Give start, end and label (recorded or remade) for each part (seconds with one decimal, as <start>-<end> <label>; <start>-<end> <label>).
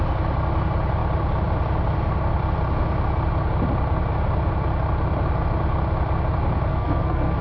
0.0-6.7 recorded; 6.7-7.4 remade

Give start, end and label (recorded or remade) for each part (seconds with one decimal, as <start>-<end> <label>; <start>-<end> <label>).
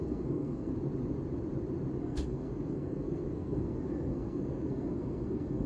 0.0-0.7 remade; 0.7-2.0 recorded; 2.0-5.7 remade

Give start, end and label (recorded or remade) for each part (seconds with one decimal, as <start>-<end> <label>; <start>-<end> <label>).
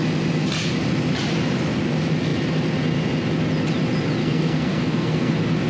0.0-4.2 recorded; 4.2-5.3 remade; 5.3-5.7 recorded